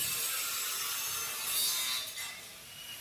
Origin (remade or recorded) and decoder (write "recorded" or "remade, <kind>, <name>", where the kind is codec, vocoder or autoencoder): recorded